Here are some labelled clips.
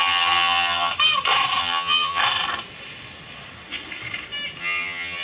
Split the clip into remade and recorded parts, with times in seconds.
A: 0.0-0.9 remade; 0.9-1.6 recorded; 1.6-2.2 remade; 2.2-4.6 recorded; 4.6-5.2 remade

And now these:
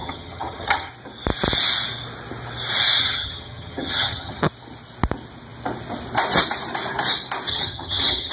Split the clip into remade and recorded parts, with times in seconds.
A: 0.0-0.9 remade; 0.9-3.0 recorded; 3.0-4.5 remade; 4.5-7.5 recorded; 7.5-8.3 remade

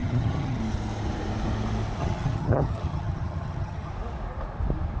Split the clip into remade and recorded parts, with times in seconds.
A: 0.0-0.6 remade; 0.6-2.0 recorded; 2.0-3.9 remade; 3.9-5.0 recorded

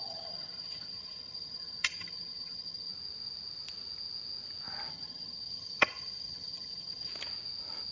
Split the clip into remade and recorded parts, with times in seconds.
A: 0.0-2.9 remade; 2.9-4.9 recorded; 4.9-7.1 remade; 7.1-7.9 recorded

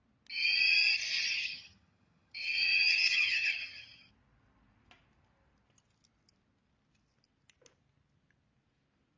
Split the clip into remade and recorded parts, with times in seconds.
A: 0.0-1.3 recorded; 1.3-4.1 remade; 4.1-9.2 recorded

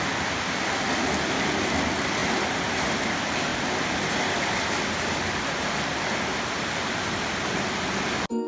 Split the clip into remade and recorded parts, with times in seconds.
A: 0.0-8.5 recorded

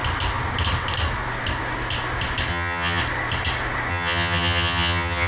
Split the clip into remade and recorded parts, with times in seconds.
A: 0.0-2.5 recorded; 2.5-3.0 remade; 3.0-3.9 recorded; 3.9-5.3 remade